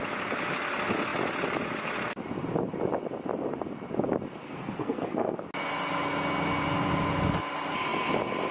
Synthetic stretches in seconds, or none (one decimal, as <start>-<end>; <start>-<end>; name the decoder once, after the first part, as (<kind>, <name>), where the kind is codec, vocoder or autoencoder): 4.4-5.4 (codec, SNAC)